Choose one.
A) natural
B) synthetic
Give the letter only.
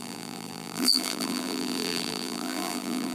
B